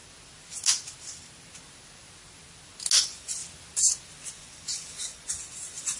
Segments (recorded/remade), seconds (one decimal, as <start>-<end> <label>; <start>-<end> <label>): 0.0-3.0 recorded; 3.0-3.4 remade; 3.4-4.3 recorded; 4.3-6.0 remade